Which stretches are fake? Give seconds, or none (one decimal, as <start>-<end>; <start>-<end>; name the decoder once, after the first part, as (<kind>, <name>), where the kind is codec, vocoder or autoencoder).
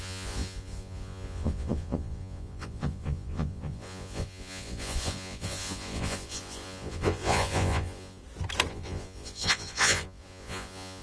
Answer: 0.0-8.2 (vocoder, Vocos); 8.7-11.0